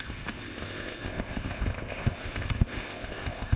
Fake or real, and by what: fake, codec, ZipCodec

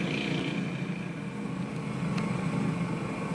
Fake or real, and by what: real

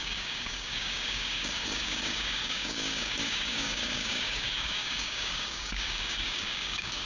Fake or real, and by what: fake, codec, DAC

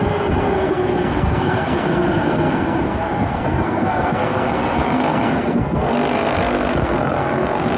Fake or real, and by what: fake, codec, SNAC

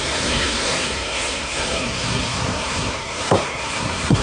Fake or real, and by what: fake, codec, SNAC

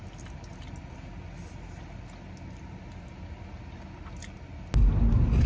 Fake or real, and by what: real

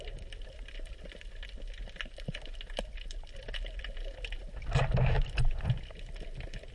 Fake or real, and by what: real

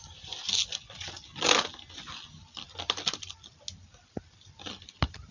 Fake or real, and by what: real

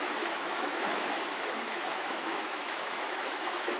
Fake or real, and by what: fake, autoencoder, DAC-VAE